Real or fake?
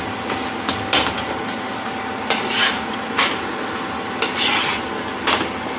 real